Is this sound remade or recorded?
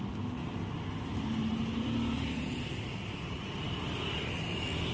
recorded